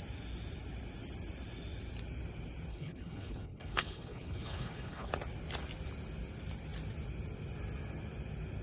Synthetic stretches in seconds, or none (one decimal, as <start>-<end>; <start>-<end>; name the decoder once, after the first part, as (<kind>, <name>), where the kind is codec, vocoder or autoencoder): 2.7-5.1 (codec, HILCodec)